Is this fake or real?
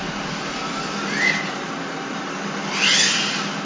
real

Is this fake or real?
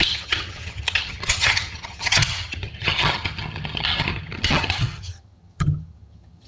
fake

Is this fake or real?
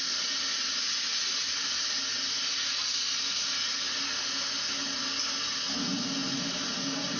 real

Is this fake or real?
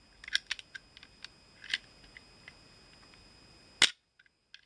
real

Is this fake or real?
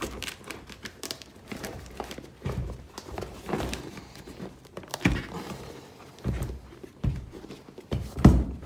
fake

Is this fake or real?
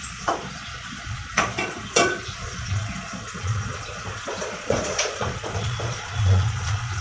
fake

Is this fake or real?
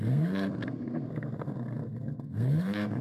fake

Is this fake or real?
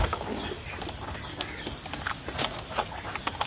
real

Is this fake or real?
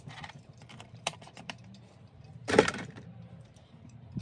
fake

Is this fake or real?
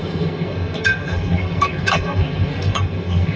fake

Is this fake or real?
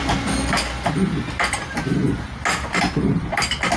real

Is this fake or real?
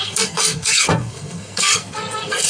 fake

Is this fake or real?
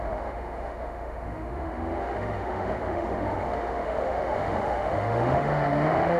fake